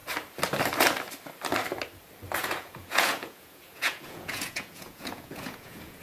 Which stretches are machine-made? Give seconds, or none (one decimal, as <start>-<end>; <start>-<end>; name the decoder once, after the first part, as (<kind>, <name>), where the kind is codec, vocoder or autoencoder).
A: 2.4-6.0 (vocoder, Vocos)